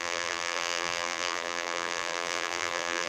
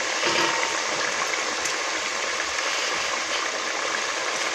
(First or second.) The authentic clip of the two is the second